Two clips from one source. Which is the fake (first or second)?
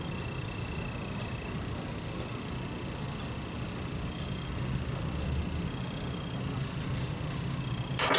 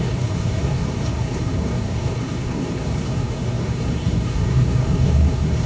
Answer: second